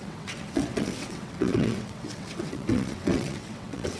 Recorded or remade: remade